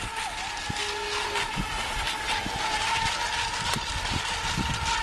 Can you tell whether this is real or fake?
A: real